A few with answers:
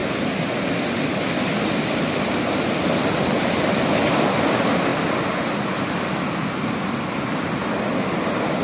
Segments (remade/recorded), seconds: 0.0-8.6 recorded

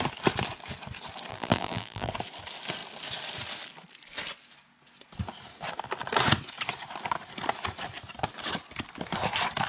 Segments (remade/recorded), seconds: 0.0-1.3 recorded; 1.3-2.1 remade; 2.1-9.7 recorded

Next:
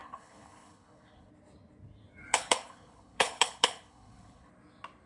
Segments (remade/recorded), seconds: 0.0-1.3 remade; 1.3-2.3 recorded; 2.3-4.5 remade; 4.5-5.1 recorded

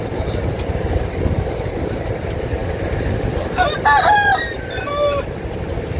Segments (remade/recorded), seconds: 0.0-6.0 recorded